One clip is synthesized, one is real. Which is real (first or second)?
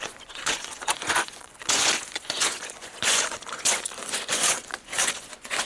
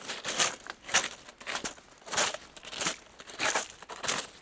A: second